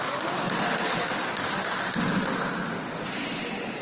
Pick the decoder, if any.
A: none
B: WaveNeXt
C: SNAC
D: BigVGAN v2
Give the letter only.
A